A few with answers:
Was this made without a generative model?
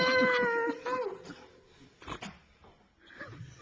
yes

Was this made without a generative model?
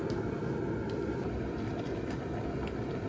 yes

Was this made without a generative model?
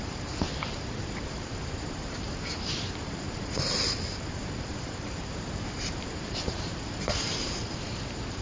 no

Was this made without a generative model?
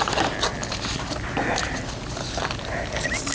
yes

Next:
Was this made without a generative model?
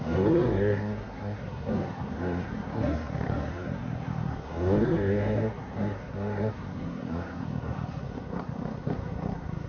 no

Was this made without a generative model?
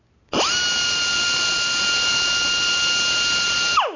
yes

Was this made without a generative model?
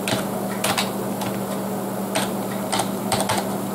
yes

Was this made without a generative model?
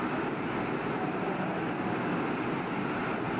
yes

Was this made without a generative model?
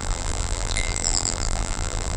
no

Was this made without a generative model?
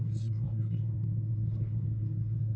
no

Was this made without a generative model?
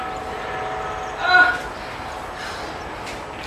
yes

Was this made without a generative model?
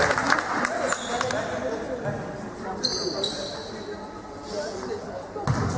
yes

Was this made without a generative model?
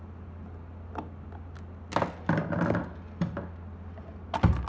yes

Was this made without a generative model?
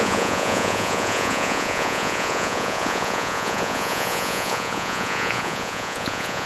no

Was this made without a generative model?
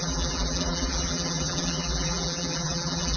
no